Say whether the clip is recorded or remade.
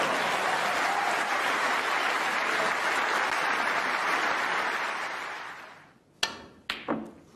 recorded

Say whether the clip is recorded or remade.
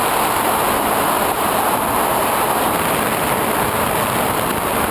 recorded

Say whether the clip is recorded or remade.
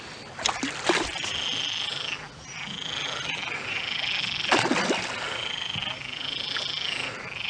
recorded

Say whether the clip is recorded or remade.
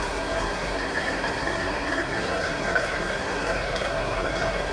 remade